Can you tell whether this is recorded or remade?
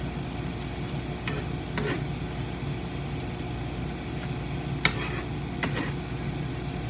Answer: recorded